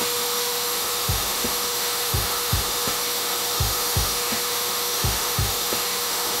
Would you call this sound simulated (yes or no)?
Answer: yes